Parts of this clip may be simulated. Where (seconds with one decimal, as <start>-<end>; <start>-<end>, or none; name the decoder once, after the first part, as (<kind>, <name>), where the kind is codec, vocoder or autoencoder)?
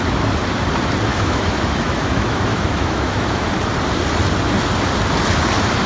1.1-3.5 (autoencoder, DAC-VAE)